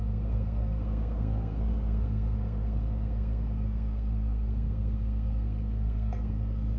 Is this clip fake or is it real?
fake